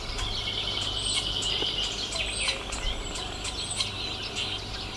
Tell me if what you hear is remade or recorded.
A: recorded